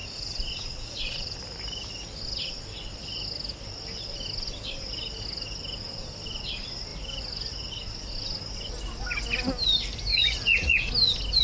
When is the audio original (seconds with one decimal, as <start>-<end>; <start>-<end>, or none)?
1.4-10.1; 10.9-11.4